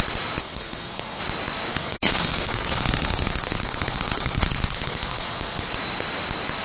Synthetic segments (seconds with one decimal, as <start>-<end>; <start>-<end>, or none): 0.4-1.2; 1.7-5.7